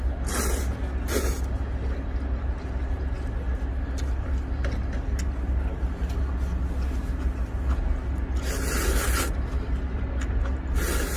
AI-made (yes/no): no